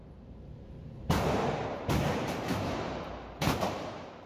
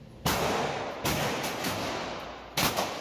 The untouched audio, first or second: second